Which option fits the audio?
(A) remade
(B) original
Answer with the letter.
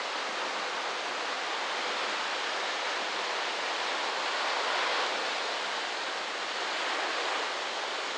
B